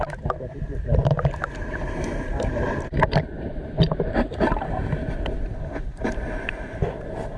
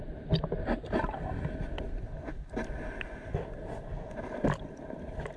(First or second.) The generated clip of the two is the first